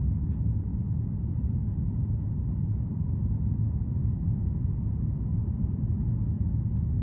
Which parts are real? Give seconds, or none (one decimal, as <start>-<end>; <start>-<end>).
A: 0.0-0.7; 4.8-5.3; 5.8-7.0